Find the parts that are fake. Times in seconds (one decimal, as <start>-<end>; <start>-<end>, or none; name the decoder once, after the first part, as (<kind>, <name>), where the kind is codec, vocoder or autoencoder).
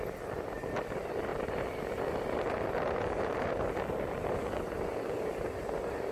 none